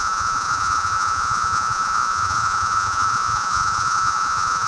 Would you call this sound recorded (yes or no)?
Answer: no